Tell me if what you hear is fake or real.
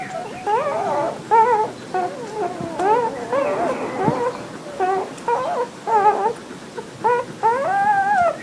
real